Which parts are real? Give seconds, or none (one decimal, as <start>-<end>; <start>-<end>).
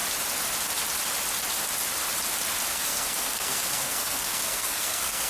0.0-2.7